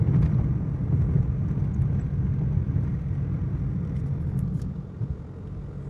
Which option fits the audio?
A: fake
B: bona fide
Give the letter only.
B